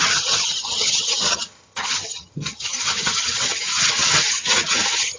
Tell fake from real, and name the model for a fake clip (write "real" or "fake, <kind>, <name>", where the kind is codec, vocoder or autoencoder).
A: fake, vocoder, HiFi-GAN